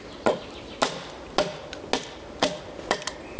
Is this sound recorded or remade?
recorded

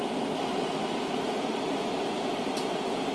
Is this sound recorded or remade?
recorded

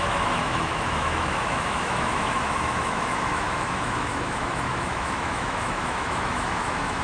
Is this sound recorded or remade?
remade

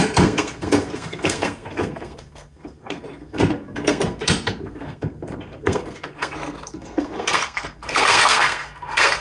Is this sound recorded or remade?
remade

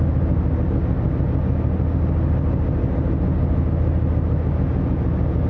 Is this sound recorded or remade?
recorded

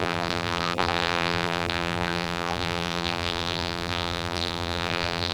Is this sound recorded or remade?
remade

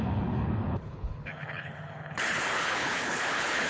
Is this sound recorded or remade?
remade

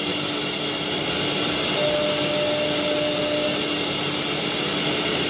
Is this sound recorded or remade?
recorded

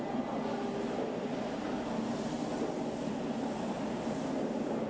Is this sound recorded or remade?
recorded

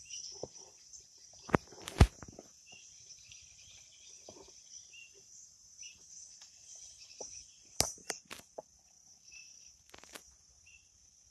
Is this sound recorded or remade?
recorded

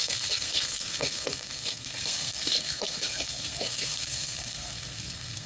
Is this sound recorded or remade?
remade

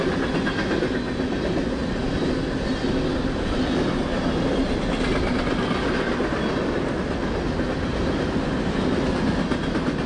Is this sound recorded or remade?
recorded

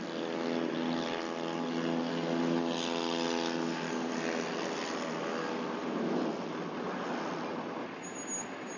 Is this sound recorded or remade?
recorded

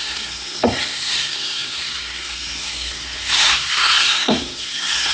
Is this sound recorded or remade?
remade